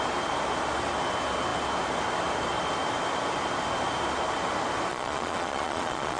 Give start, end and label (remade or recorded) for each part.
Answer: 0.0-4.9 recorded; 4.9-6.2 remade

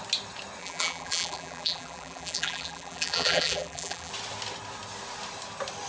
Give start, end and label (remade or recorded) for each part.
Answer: 0.0-0.6 recorded; 0.6-4.1 remade; 4.1-5.9 recorded